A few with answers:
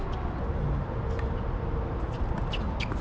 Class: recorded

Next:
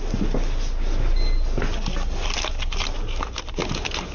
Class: recorded